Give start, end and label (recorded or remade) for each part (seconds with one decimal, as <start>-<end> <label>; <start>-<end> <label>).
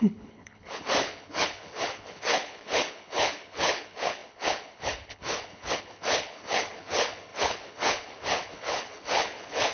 0.0-9.7 remade